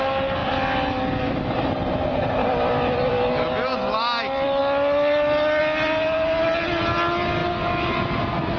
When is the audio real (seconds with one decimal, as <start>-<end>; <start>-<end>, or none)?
0.0-2.4; 3.1-8.6